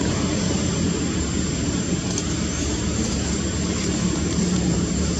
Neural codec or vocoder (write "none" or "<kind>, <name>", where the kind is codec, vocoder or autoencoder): vocoder, BigVGAN v2